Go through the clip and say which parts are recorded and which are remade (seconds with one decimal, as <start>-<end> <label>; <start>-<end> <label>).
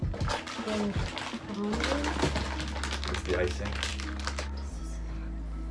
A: 0.0-5.7 recorded